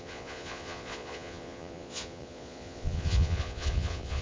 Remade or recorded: remade